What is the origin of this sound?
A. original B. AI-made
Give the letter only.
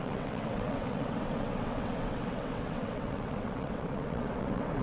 B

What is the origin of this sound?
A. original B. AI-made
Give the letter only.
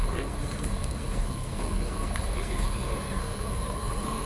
B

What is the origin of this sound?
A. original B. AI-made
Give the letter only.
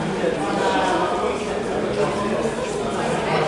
A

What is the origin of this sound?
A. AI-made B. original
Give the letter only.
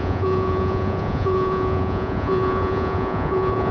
A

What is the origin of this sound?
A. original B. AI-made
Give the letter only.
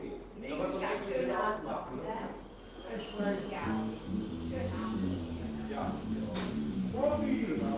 A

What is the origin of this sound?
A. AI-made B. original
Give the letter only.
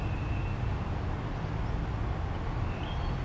B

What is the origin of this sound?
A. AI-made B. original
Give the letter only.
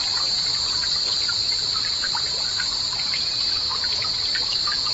A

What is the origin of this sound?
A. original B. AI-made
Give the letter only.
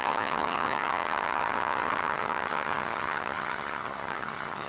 B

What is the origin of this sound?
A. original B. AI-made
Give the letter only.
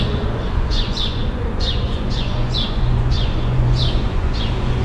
B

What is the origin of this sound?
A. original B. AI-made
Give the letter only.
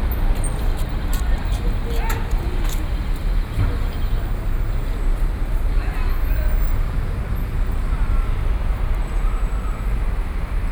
A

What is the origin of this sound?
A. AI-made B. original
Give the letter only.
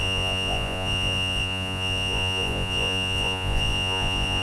A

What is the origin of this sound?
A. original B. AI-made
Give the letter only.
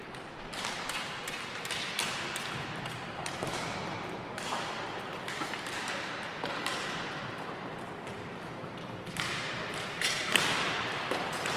B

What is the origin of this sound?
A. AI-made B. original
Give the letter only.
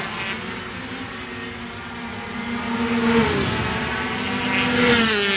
B